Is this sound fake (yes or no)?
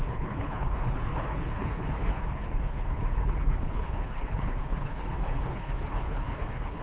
yes